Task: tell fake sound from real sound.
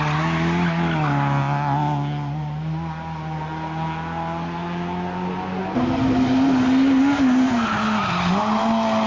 real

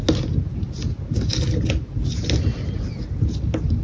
real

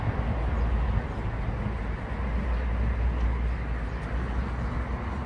real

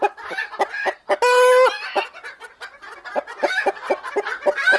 real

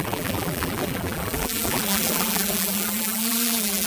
fake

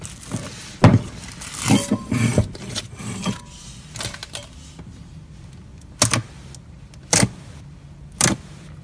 real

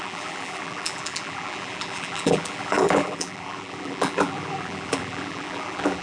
fake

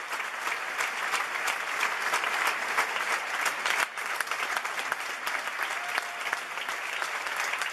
real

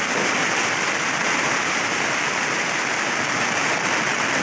real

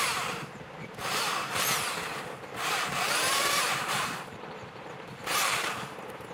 fake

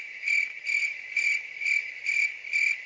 real